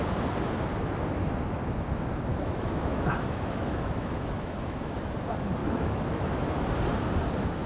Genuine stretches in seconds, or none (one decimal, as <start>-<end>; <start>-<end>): 0.0-2.3; 5.0-5.6; 6.7-7.7